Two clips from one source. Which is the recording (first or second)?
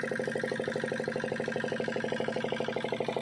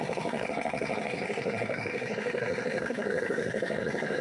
first